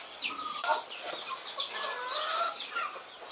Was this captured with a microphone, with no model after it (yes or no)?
yes